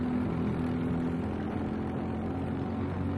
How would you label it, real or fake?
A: real